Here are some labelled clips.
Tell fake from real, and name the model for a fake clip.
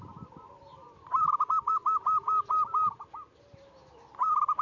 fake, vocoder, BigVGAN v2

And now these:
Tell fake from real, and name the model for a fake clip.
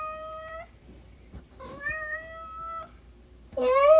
fake, vocoder, BigVGAN v2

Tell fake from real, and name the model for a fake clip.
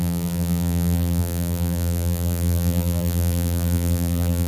fake, vocoder, BigVGAN v2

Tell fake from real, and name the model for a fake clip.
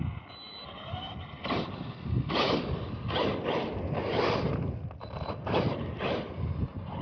real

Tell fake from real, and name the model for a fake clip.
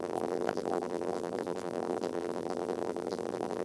fake, vocoder, BigVGAN v2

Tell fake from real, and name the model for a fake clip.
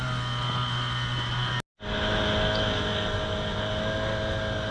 real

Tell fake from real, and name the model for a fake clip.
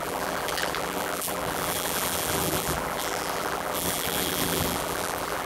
fake, vocoder, BigVGAN v2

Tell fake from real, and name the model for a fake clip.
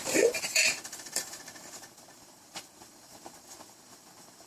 fake, vocoder, BigVGAN v2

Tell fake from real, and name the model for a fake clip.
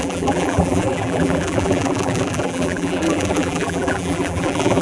fake, vocoder, BigVGAN v2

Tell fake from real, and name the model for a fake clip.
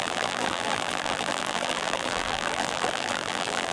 fake, vocoder, BigVGAN v2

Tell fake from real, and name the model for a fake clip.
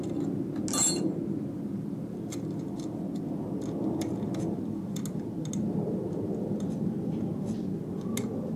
real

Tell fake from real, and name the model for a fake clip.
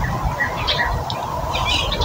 real